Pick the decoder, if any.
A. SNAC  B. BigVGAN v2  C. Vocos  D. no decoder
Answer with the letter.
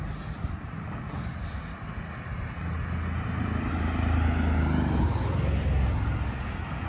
D